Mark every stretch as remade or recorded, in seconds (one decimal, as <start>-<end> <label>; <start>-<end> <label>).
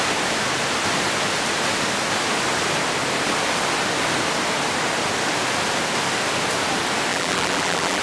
0.0-7.1 recorded; 7.1-8.0 remade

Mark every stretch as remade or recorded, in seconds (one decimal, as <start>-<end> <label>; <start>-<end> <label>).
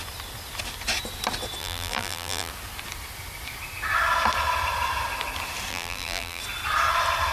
0.0-1.6 recorded; 1.6-2.5 remade; 2.5-5.7 recorded; 5.7-6.4 remade; 6.4-7.3 recorded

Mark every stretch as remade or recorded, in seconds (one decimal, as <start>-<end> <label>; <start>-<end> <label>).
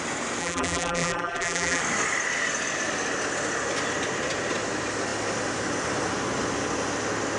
0.0-0.4 recorded; 0.4-1.8 remade; 1.8-7.4 recorded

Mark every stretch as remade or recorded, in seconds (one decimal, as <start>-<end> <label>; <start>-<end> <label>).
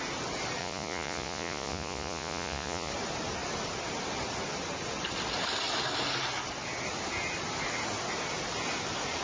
0.0-0.6 recorded; 0.6-2.9 remade; 2.9-9.2 recorded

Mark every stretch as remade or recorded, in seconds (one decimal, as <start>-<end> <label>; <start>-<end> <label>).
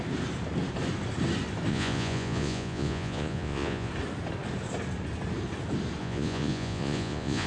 0.0-1.7 recorded; 1.7-3.9 remade; 3.9-6.0 recorded; 6.0-7.5 remade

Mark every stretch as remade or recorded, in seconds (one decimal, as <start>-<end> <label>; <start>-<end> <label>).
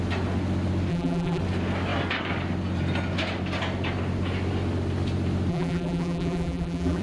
0.0-0.9 recorded; 0.9-1.4 remade; 1.4-5.5 recorded; 5.5-7.0 remade